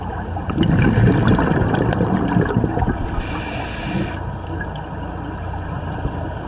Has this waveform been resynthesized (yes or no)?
no